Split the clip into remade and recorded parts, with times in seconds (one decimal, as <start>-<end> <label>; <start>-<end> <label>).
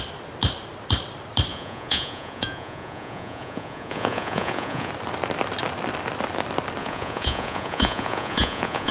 0.0-1.5 recorded; 1.5-4.9 remade; 4.9-6.8 recorded; 6.8-8.9 remade